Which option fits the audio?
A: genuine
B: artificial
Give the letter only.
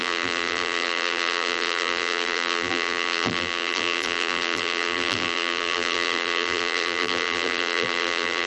B